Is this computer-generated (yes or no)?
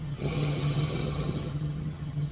yes